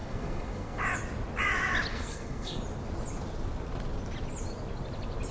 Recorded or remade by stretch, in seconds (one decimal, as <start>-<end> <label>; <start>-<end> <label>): 0.0-0.8 remade; 0.8-1.9 recorded; 1.9-2.6 remade; 2.6-5.3 recorded